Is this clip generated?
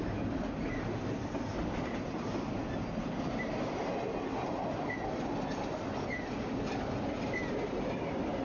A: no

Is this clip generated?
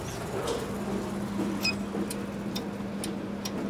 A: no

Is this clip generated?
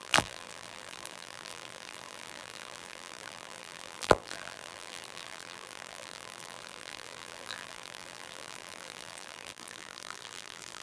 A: yes